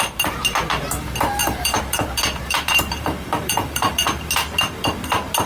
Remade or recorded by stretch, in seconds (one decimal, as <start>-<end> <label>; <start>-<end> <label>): 0.0-1.4 recorded; 1.4-4.1 remade; 4.1-5.5 recorded